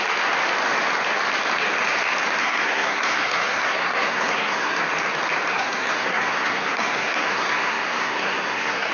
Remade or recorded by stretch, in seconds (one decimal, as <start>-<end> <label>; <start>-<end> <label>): 0.0-2.4 recorded; 2.4-4.8 remade; 4.8-5.5 recorded; 5.5-8.9 remade